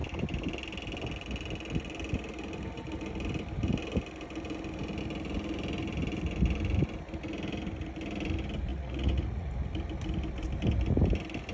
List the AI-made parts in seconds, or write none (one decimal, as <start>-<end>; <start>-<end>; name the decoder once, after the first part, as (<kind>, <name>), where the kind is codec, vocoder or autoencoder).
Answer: 8.7-9.5 (vocoder, Vocos)